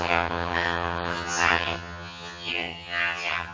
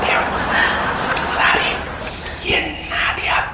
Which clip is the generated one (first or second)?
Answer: first